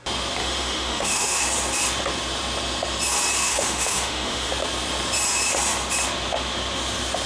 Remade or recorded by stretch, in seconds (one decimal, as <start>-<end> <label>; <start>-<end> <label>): 0.0-0.4 recorded; 0.4-1.4 remade; 1.4-3.4 recorded; 3.4-4.5 remade; 4.5-7.3 recorded